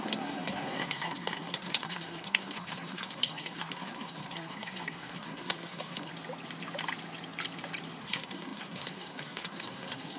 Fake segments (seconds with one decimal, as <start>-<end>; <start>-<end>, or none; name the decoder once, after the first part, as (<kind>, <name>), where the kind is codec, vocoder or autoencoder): 0.0-6.1 (codec, SNAC); 8.0-10.2